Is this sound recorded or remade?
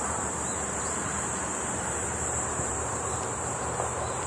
remade